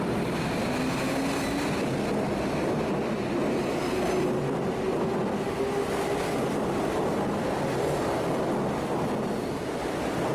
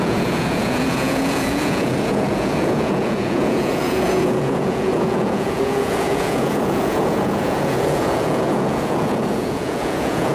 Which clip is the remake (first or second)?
second